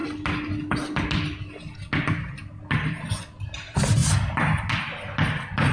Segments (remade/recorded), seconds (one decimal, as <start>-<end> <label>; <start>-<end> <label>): 0.0-5.7 recorded